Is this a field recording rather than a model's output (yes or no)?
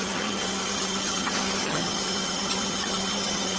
no